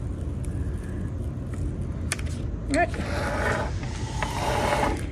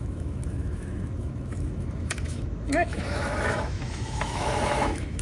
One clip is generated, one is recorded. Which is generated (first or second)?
second